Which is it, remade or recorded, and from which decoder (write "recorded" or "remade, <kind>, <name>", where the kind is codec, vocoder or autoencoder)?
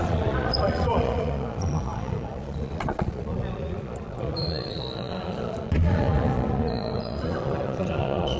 remade, vocoder, Vocos